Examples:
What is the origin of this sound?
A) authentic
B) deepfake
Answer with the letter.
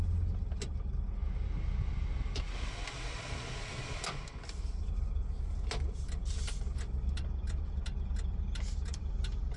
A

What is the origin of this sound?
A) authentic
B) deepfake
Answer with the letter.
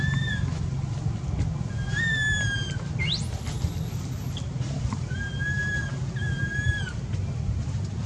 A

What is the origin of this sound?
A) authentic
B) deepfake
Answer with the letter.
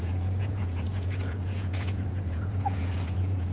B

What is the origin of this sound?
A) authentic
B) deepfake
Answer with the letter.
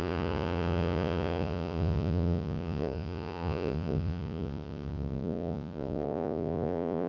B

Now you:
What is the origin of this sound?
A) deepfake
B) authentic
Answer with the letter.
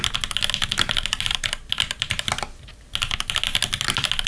B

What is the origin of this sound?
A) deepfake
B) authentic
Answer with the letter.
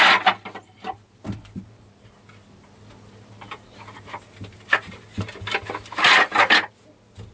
B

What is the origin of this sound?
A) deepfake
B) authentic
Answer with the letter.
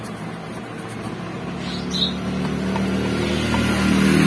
B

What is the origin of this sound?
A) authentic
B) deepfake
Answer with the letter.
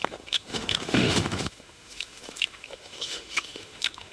B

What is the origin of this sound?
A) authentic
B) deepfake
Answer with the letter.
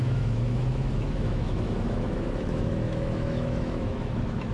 B